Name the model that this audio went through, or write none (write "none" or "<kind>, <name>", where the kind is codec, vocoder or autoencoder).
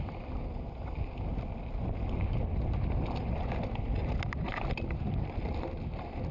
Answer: none